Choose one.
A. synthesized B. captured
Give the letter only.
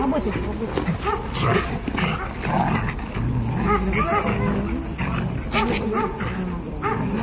B